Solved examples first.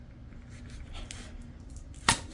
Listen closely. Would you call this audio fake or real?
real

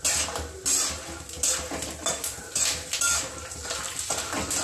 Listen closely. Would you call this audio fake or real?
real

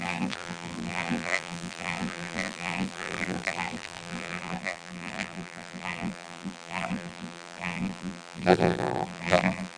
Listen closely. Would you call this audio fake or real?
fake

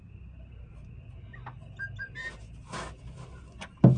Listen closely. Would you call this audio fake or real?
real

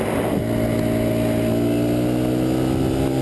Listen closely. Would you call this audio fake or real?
real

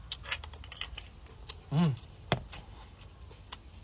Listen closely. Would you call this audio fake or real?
real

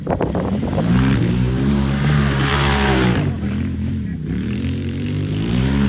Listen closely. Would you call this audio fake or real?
fake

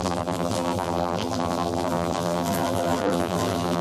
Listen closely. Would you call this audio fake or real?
fake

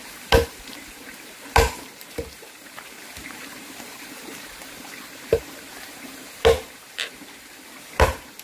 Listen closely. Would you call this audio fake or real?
fake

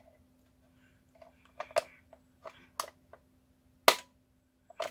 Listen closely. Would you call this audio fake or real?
real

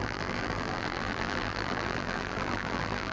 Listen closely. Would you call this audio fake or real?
fake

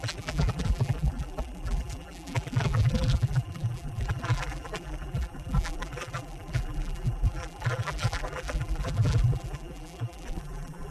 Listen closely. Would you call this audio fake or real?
fake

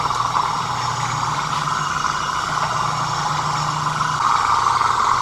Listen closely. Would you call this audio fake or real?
real